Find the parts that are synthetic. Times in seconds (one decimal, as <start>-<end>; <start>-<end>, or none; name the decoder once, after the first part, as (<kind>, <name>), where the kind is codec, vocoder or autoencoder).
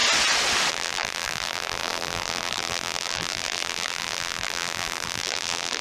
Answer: 0.7-5.8 (vocoder, BigVGAN v2)